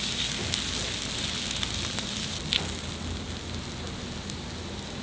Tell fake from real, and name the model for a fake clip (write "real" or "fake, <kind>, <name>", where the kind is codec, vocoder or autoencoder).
real